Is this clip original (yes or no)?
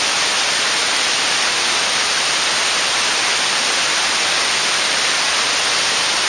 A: yes